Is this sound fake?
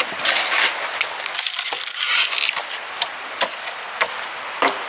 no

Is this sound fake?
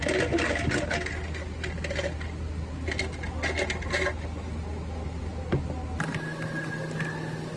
no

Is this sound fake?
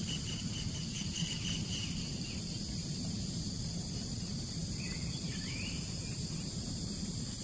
yes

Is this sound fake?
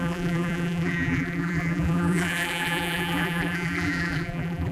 yes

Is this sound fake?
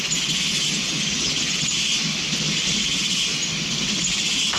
no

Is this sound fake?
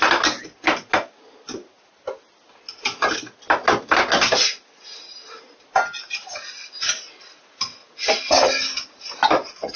no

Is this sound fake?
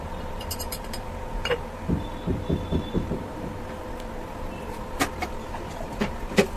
yes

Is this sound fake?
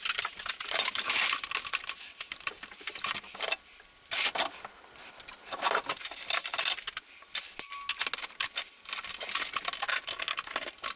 no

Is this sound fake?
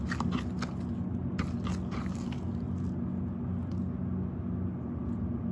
no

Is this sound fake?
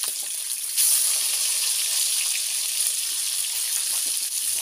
no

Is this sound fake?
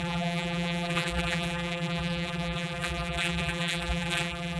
yes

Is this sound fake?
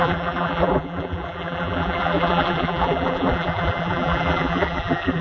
yes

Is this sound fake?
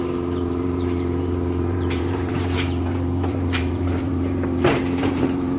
yes